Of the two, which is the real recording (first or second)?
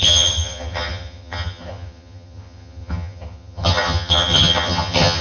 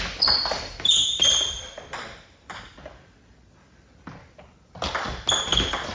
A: second